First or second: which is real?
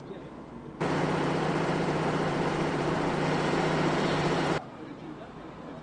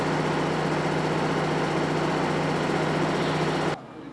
second